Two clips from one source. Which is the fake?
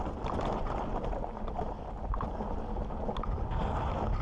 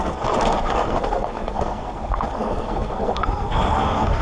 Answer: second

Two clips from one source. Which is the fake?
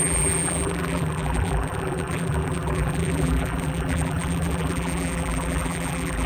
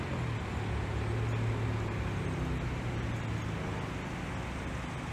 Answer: first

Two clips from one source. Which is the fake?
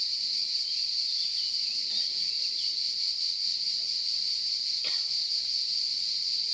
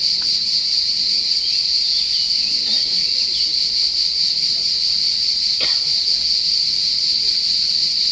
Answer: first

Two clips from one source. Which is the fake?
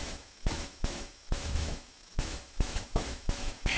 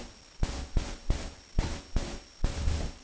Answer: first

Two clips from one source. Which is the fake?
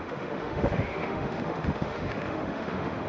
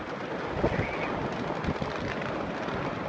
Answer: first